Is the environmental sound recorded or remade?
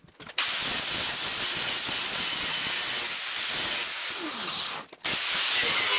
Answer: recorded